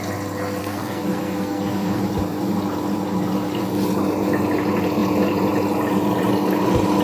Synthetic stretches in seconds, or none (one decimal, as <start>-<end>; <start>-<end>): 0.6-2.0